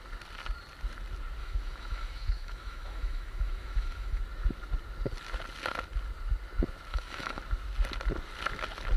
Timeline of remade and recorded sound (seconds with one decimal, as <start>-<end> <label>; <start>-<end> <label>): 0.0-1.4 recorded; 1.4-4.2 remade; 4.2-6.9 recorded; 6.9-7.4 remade; 7.4-9.0 recorded

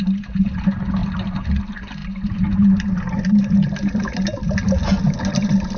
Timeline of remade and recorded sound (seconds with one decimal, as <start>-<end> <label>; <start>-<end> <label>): 0.0-5.8 recorded

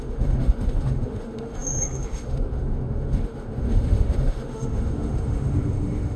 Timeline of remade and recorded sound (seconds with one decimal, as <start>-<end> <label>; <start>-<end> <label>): 0.0-6.2 remade

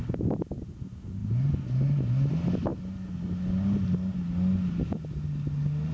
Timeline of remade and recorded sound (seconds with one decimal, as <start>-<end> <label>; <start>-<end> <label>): 0.0-5.9 recorded

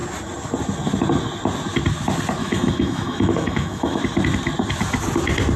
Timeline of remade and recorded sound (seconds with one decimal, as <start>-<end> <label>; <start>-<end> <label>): 0.0-2.4 recorded; 2.4-4.0 remade; 4.0-5.6 recorded

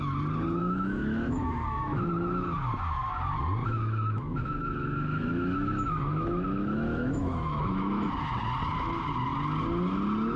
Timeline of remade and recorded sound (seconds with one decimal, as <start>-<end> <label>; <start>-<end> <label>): 0.0-0.6 recorded; 0.6-2.1 remade; 2.1-3.6 recorded; 3.6-8.1 remade; 8.1-10.4 recorded

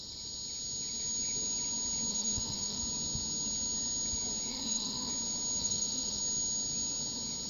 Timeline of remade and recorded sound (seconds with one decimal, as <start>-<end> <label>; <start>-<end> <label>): 0.0-2.1 recorded; 2.1-2.8 remade; 2.8-4.5 recorded; 4.5-5.1 remade; 5.1-5.6 recorded; 5.6-6.2 remade; 6.2-7.5 recorded